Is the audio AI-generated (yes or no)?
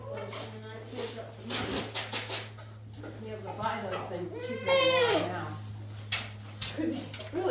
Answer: no